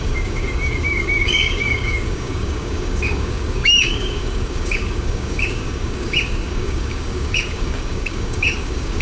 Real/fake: fake